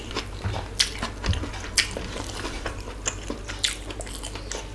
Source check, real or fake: real